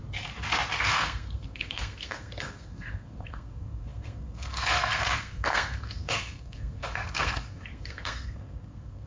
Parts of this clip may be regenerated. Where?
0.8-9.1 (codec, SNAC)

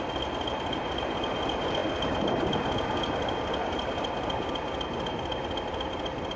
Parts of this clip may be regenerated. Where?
none

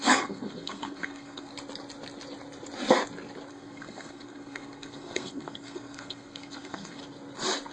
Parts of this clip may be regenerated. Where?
0.0-1.5 (codec, SNAC); 3.5-7.0

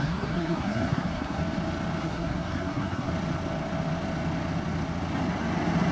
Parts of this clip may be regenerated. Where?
0.0-1.4 (codec, SNAC); 2.0-3.1